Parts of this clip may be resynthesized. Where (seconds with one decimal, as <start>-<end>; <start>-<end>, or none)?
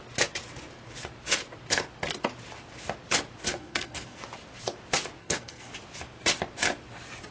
3.5-4.2; 5.2-5.7